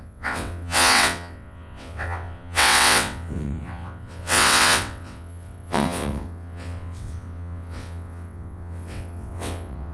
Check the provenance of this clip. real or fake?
fake